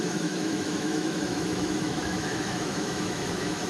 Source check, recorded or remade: remade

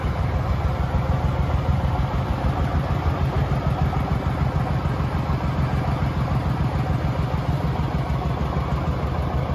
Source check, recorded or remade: recorded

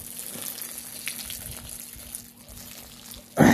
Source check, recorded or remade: recorded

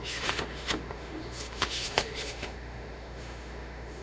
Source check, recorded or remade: remade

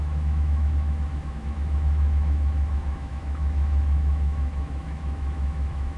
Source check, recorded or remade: remade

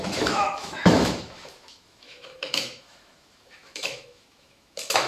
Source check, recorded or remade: remade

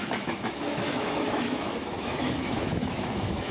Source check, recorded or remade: remade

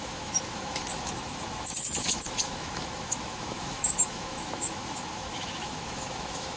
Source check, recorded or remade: remade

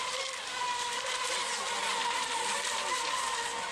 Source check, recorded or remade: recorded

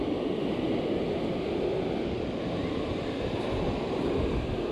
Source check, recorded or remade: recorded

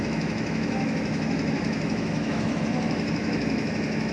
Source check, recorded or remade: remade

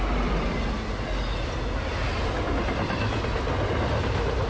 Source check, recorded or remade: recorded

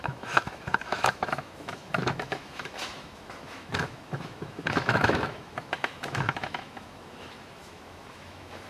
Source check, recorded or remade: remade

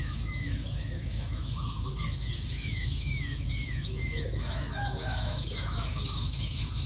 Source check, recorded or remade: remade